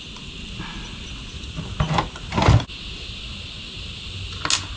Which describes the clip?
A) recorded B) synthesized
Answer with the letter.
A